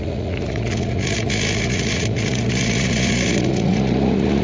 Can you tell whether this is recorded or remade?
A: remade